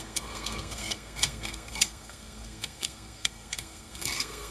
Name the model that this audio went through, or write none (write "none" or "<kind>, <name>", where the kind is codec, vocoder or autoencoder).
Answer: codec, SNAC